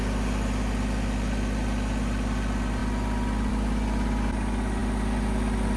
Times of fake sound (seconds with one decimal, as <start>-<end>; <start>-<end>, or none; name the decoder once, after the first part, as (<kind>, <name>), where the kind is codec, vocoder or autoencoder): none